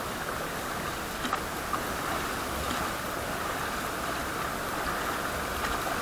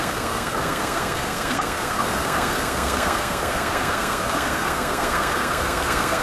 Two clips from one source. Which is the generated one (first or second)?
second